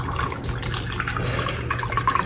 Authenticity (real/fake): real